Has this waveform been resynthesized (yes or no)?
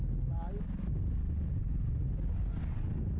no